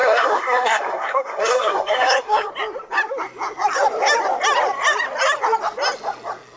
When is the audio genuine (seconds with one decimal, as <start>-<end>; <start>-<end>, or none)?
2.5-6.6